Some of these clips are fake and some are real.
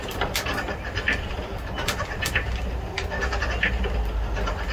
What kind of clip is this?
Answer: fake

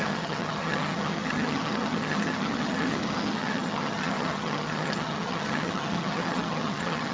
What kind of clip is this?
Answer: fake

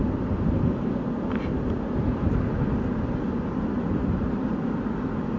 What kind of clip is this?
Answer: real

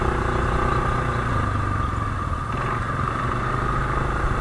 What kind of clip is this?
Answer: real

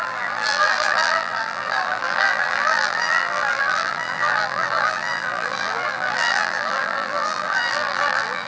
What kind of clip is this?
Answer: fake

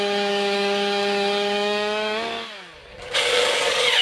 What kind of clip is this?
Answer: fake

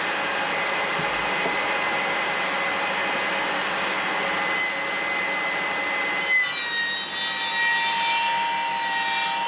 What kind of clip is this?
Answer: real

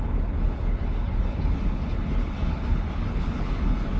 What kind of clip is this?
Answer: fake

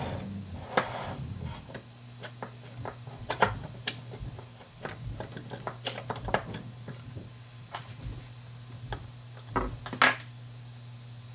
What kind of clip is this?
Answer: real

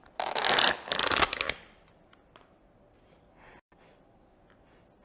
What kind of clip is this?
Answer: real